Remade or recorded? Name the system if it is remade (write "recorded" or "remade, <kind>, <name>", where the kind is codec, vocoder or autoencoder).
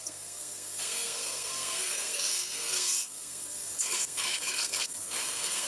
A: remade, codec, SNAC